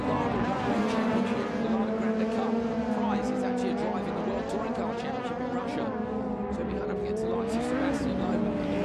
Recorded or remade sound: recorded